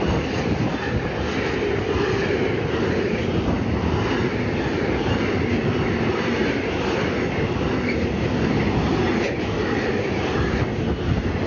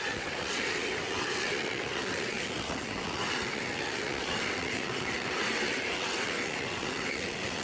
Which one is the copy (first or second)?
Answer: second